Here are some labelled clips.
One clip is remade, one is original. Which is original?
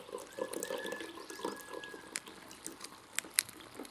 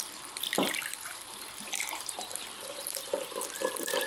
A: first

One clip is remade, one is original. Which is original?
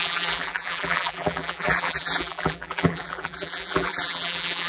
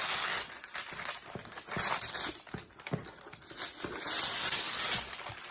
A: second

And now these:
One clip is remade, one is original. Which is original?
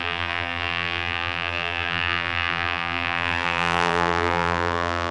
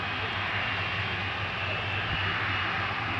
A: second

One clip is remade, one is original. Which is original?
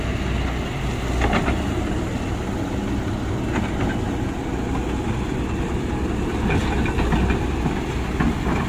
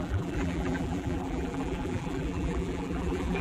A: first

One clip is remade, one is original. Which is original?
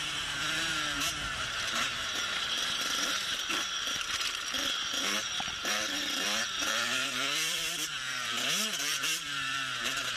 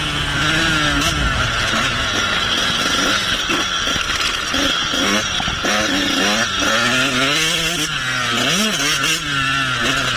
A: second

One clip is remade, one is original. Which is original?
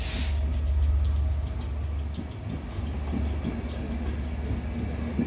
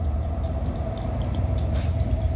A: first